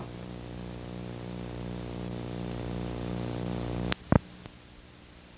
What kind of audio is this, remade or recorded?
recorded